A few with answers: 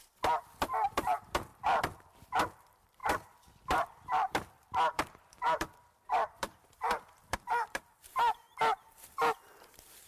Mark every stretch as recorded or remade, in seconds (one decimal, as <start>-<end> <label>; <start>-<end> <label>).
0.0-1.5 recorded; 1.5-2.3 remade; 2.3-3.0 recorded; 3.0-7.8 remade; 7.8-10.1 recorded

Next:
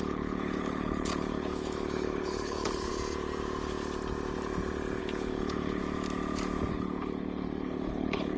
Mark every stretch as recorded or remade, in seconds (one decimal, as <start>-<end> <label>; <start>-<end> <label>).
0.0-2.9 remade; 2.9-5.0 recorded; 5.0-5.8 remade; 5.8-6.7 recorded; 6.7-8.4 remade

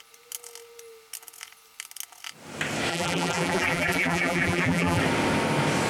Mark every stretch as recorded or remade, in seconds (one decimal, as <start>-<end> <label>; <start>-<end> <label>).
0.0-2.9 recorded; 2.9-5.0 remade; 5.0-5.9 recorded

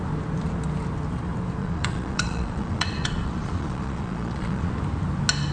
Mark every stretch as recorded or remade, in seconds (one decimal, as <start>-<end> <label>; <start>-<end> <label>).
0.0-1.6 recorded; 1.6-4.7 remade; 4.7-5.5 recorded

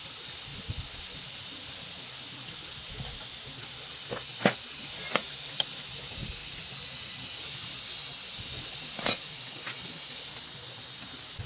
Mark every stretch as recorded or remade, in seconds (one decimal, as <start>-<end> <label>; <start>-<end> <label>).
0.0-11.5 recorded

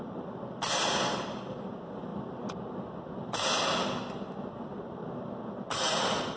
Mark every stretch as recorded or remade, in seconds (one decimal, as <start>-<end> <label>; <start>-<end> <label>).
0.0-6.4 recorded

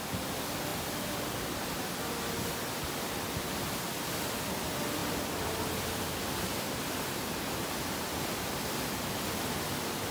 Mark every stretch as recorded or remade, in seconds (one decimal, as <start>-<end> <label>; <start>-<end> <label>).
0.0-10.1 recorded